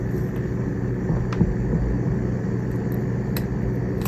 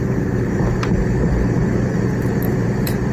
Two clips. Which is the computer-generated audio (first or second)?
second